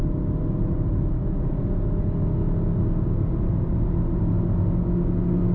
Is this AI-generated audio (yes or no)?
no